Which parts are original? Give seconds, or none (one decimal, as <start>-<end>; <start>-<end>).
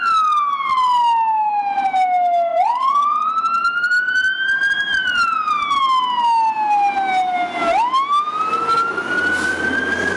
0.0-2.5; 3.3-10.2